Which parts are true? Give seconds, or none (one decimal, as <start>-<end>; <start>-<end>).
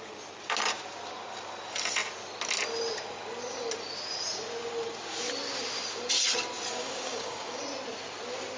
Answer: 0.0-6.8; 7.6-8.6